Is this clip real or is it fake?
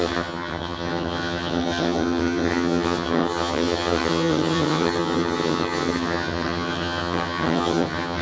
fake